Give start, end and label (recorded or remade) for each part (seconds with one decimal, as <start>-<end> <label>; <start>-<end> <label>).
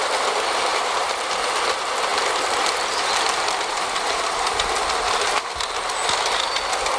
0.0-0.7 recorded; 0.7-1.5 remade; 1.5-2.1 recorded; 2.1-6.3 remade; 6.3-7.0 recorded